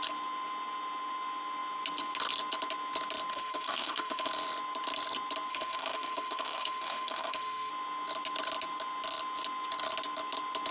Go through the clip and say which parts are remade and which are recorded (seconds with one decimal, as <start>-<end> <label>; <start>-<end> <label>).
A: 0.0-3.3 recorded; 3.3-4.3 remade; 4.3-5.5 recorded; 5.5-7.7 remade; 7.7-10.7 recorded